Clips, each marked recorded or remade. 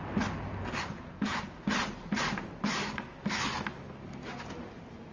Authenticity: recorded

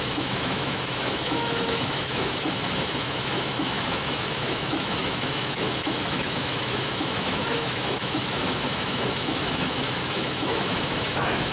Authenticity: remade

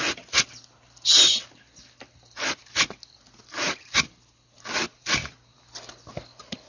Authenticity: recorded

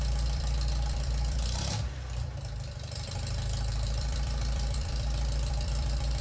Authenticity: remade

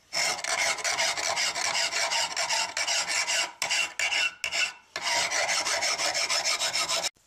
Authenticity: recorded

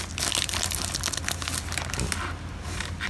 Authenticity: recorded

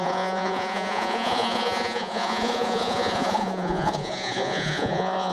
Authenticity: remade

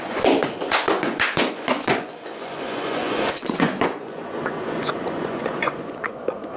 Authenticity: remade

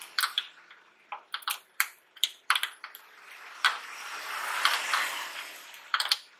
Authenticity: remade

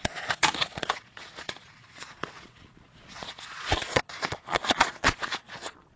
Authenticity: remade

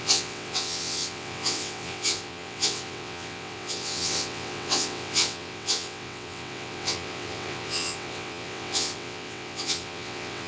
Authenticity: remade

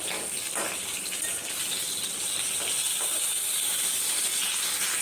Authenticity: recorded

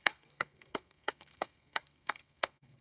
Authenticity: remade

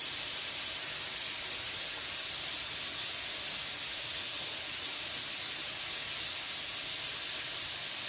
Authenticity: recorded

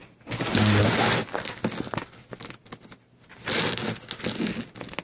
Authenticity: recorded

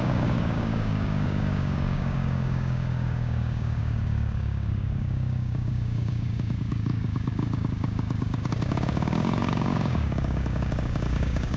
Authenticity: remade